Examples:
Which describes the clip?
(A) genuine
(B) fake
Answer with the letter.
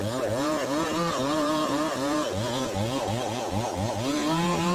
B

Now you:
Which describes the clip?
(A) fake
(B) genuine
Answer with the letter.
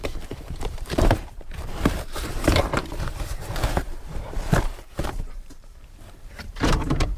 A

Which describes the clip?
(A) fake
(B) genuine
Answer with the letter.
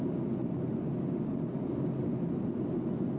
B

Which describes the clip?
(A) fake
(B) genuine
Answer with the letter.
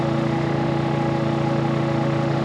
A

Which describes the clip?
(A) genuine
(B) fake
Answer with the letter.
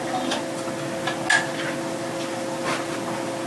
A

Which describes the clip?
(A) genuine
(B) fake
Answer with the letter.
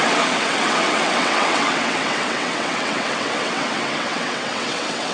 B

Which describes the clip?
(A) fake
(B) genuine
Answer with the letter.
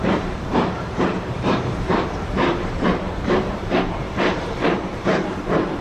A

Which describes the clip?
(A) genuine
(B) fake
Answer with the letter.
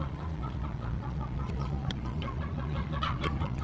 B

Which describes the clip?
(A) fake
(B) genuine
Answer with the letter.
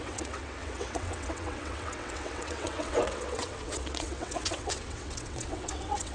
A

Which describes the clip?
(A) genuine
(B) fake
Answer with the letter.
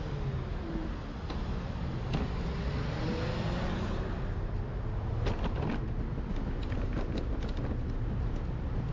A